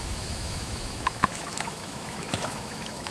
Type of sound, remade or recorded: remade